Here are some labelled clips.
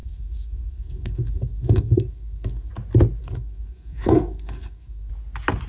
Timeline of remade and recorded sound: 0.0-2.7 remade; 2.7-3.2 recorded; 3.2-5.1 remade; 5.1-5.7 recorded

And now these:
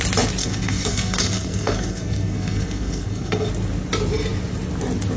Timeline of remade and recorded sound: 0.0-0.4 recorded; 0.4-3.5 remade; 3.5-5.2 recorded

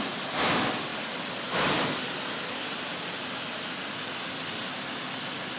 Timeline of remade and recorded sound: 0.0-5.6 recorded

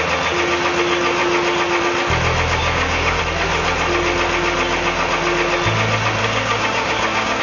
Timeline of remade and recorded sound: 0.0-2.6 recorded; 2.6-3.2 remade; 3.2-6.2 recorded; 6.2-7.4 remade

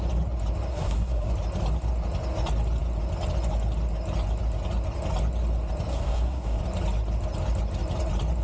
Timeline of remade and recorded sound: 0.0-0.7 recorded; 0.7-1.3 remade; 1.3-5.9 recorded; 5.9-6.6 remade; 6.6-8.4 recorded

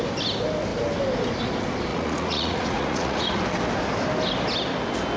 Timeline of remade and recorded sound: 0.0-1.9 recorded; 1.9-3.4 remade; 3.4-5.2 recorded